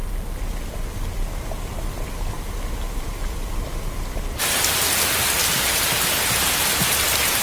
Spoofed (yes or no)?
no